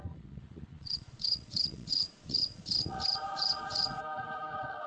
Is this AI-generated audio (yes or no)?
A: yes